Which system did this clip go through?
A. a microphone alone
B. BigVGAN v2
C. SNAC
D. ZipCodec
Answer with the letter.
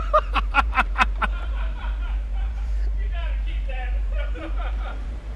B